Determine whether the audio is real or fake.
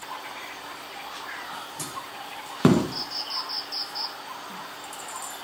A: real